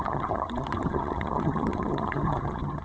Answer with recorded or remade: remade